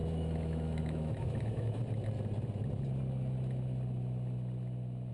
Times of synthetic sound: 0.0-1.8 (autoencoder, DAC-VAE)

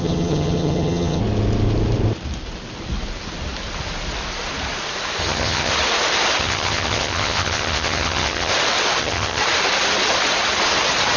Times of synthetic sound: 0.0-1.2 (vocoder, HiFi-GAN); 5.2-5.7; 6.4-8.5; 9.0-9.4